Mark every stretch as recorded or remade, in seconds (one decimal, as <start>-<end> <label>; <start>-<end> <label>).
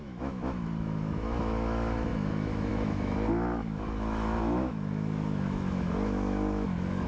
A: 0.0-7.1 remade